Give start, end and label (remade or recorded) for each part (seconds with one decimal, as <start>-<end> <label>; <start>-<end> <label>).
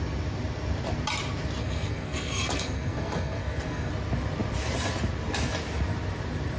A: 0.0-1.6 recorded; 1.6-3.9 remade; 3.9-6.6 recorded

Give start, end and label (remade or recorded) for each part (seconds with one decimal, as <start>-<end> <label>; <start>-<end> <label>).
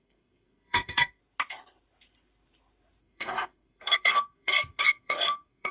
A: 0.0-1.2 remade; 1.2-3.0 recorded; 3.0-5.7 remade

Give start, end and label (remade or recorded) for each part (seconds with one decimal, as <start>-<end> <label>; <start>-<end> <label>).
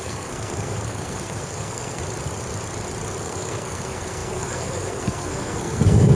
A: 0.0-2.0 remade; 2.0-3.2 recorded; 3.2-6.2 remade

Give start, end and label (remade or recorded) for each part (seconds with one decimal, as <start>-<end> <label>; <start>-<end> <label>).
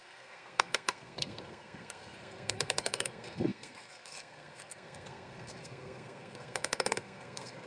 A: 0.0-7.7 remade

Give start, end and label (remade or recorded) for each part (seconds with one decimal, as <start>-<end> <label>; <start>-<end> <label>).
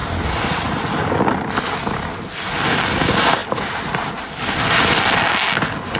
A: 0.0-6.0 recorded